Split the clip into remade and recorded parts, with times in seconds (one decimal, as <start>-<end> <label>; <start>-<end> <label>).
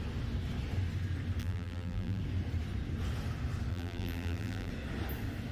0.0-1.4 recorded; 1.4-2.2 remade; 2.2-3.7 recorded; 3.7-4.7 remade; 4.7-5.5 recorded